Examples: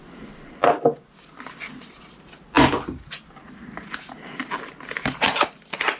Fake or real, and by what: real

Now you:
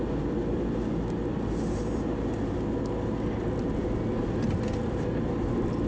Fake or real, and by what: real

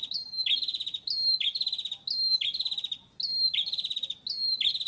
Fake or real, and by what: real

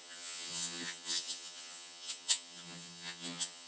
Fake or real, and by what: fake, vocoder, HiFi-GAN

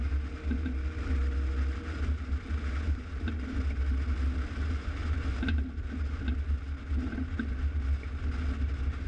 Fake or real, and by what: real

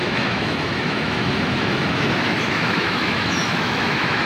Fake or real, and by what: fake, autoencoder, DAC-VAE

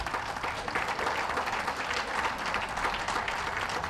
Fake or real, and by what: real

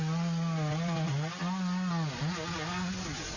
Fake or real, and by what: real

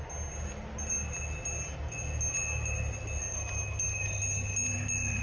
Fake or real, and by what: real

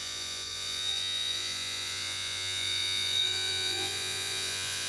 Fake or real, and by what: fake, vocoder, Vocos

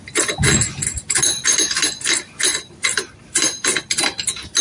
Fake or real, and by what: real